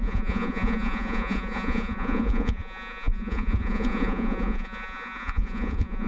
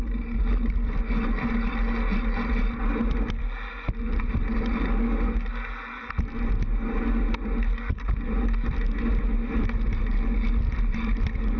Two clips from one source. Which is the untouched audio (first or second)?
second